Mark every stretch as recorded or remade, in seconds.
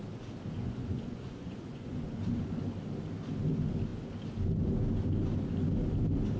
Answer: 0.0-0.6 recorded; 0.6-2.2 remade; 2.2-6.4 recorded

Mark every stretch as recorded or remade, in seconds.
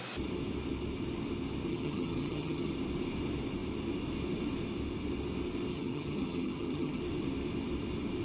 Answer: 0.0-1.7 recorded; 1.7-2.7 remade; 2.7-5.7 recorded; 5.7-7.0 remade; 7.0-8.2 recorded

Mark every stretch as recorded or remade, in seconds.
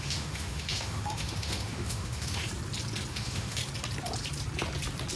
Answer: 0.0-2.5 remade; 2.5-3.1 recorded; 3.1-3.6 remade; 3.6-5.2 recorded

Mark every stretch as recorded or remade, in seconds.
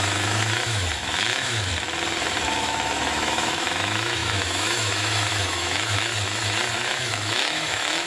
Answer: 0.0-1.7 remade; 1.7-2.5 recorded; 2.5-6.1 remade; 6.1-6.9 recorded; 6.9-8.1 remade